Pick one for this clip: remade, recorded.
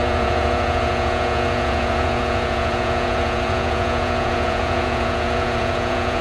remade